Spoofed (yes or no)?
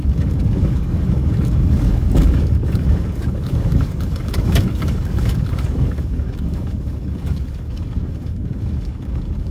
yes